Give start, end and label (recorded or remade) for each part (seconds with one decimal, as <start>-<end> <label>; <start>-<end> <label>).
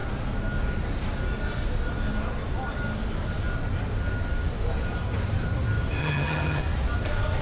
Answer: 0.0-6.0 recorded; 6.0-6.6 remade; 6.6-7.4 recorded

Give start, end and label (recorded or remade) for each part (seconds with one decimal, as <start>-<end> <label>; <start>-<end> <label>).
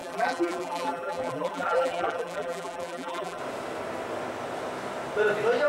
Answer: 0.0-3.4 remade; 3.4-5.7 recorded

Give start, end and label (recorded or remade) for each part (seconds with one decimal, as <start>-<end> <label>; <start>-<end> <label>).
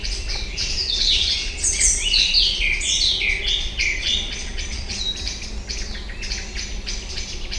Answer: 0.0-0.8 recorded; 0.8-3.4 remade; 3.4-4.0 recorded; 4.0-5.0 remade; 5.0-7.6 recorded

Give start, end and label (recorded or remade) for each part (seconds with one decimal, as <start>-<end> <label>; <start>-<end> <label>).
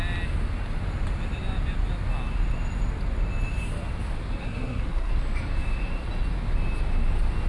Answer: 0.0-4.4 recorded; 4.4-5.1 remade; 5.1-7.5 recorded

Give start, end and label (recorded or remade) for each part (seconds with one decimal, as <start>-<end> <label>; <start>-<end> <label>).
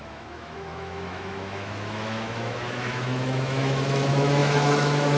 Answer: 0.0-5.2 remade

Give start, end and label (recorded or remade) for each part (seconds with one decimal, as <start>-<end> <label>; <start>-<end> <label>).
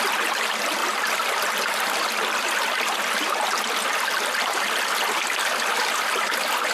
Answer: 0.0-6.7 recorded